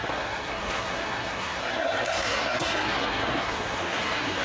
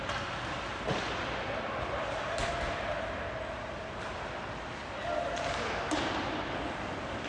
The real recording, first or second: second